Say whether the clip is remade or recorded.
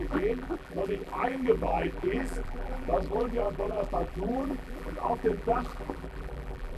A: remade